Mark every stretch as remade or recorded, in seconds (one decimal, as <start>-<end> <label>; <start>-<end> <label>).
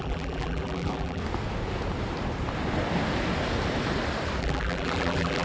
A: 0.0-1.2 remade; 1.2-4.4 recorded; 4.4-5.4 remade